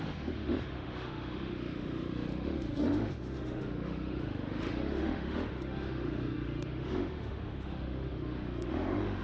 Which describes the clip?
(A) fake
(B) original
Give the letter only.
A